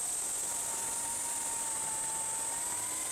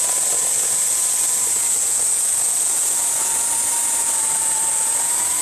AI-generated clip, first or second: second